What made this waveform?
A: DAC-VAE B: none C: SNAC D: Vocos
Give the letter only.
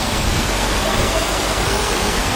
C